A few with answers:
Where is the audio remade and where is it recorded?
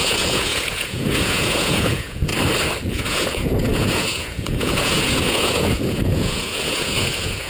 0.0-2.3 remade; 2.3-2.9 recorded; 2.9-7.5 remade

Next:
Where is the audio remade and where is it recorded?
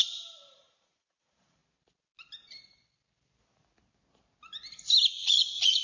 0.0-0.6 recorded; 0.6-1.6 remade; 1.6-5.1 recorded; 5.1-5.8 remade